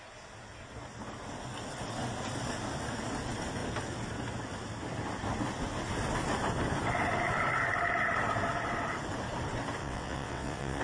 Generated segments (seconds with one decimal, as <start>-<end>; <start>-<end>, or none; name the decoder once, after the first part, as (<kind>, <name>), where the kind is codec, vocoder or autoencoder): 9.8-10.8 (vocoder, WaveNeXt)